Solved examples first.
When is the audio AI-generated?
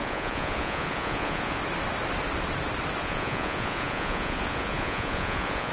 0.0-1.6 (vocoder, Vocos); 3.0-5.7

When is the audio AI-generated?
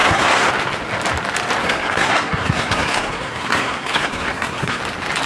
0.0-0.5 (codec, SNAC); 1.6-4.8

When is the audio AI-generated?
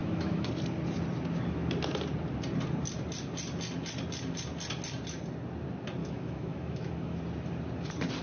0.0-0.5 (autoencoder, DAC-VAE); 6.0-7.2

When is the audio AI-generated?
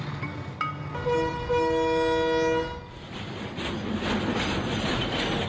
none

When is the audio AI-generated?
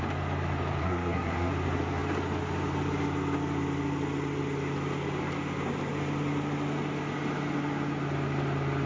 0.8-1.5 (codec, SNAC)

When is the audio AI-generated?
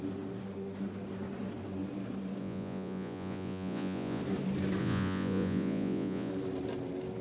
2.4-4.2 (vocoder, Vocos); 4.8-6.3